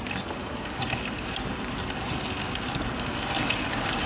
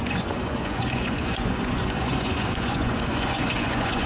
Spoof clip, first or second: second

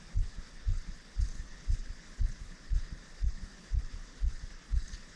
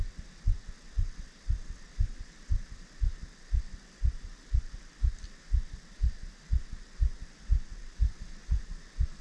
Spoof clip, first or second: first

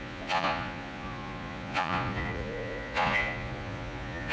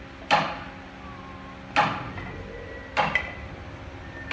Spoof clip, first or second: first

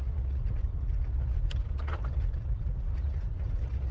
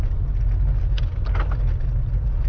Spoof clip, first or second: first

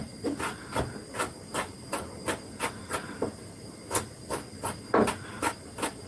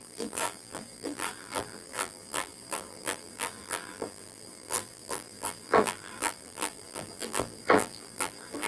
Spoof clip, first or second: second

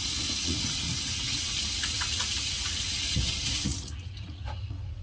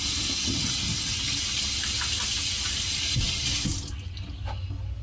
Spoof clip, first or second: first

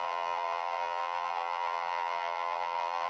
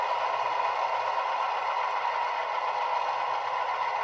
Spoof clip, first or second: first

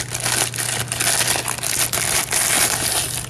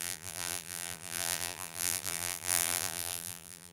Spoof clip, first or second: second